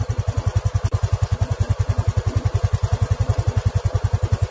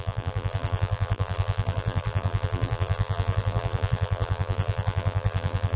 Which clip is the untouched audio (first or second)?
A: first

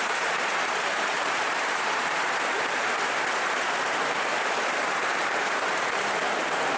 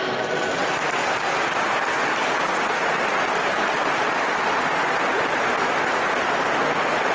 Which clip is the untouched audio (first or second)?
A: second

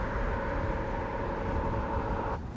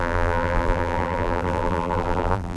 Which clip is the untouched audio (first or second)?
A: first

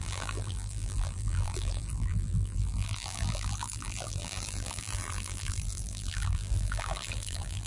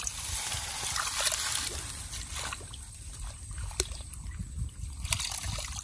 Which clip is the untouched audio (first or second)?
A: second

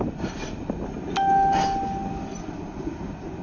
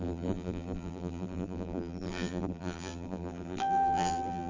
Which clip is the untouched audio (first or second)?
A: first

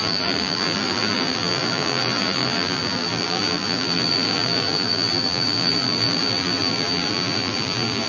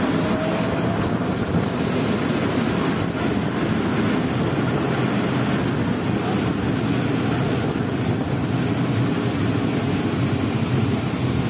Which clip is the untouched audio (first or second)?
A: second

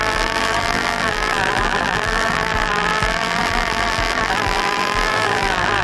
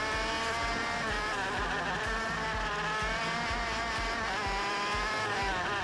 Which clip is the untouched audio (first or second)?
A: second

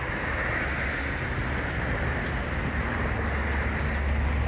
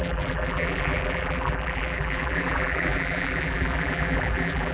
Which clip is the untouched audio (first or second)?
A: first